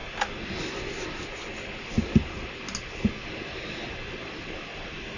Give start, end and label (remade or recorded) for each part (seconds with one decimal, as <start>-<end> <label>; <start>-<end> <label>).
0.0-5.2 recorded